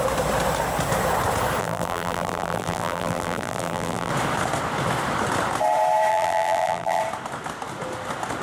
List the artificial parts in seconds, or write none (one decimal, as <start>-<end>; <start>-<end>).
1.6-4.1; 6.1-7.0